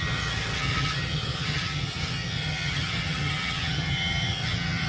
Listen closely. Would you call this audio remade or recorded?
remade